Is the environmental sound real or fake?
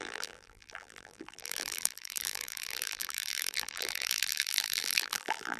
fake